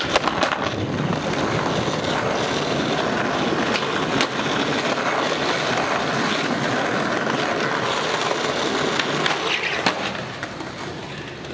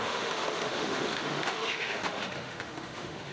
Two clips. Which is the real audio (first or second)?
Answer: first